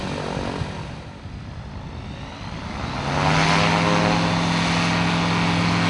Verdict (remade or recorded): recorded